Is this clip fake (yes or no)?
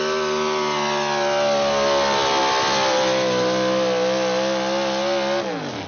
no